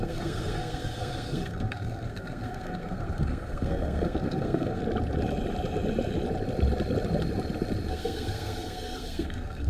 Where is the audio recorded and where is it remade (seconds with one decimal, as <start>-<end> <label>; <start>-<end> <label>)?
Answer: 0.0-4.8 remade; 4.8-7.9 recorded; 7.9-9.7 remade